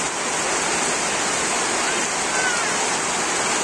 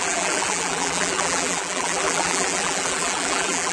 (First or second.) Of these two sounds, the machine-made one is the second